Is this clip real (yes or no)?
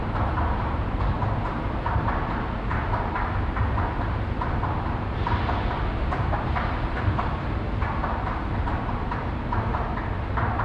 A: no